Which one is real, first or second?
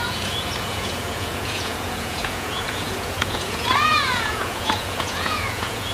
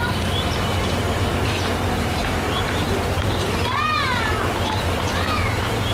second